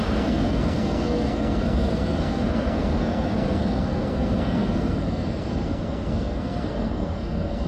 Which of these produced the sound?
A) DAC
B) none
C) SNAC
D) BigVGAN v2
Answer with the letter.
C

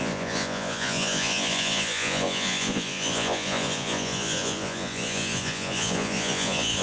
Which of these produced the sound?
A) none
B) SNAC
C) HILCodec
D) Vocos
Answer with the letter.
D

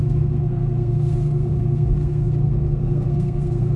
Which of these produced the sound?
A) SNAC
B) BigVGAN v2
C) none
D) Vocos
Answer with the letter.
A